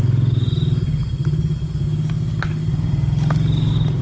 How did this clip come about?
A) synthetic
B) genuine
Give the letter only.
B